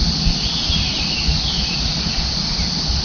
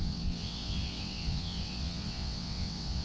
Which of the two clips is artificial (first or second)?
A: second